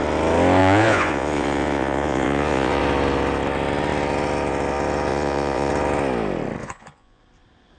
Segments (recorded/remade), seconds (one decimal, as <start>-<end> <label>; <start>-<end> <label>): 0.0-0.6 recorded; 0.6-2.8 remade; 2.8-5.1 recorded; 5.1-5.7 remade; 5.7-6.6 recorded; 6.6-7.2 remade; 7.2-7.8 recorded